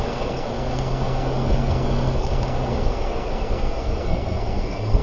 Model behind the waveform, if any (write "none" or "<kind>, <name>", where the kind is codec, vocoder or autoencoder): codec, SNAC